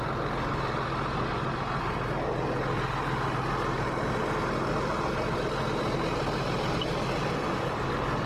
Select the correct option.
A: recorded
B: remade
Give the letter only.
A